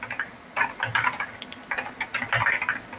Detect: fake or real fake